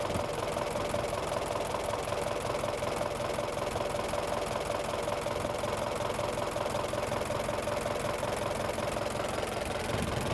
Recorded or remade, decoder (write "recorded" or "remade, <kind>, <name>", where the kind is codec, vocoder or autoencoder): recorded